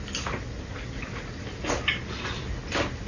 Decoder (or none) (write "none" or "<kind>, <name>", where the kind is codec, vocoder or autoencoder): none